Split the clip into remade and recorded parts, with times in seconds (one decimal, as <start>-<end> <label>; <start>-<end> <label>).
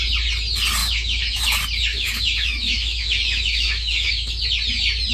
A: 0.0-0.8 recorded; 0.8-1.4 remade; 1.4-1.9 recorded; 1.9-4.3 remade; 4.3-5.1 recorded